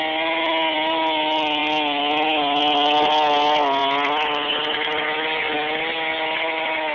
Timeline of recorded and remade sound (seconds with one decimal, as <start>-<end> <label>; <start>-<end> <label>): 0.0-6.9 recorded